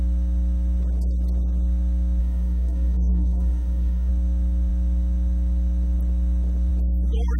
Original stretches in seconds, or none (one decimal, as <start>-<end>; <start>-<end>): 0.0-2.2; 4.1-7.4